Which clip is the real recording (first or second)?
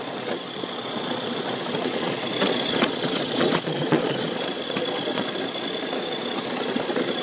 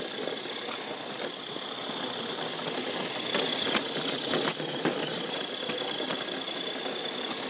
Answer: second